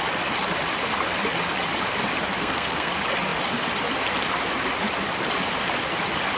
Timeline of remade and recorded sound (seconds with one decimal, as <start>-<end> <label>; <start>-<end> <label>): 0.0-2.4 recorded; 2.4-2.9 remade; 2.9-6.4 recorded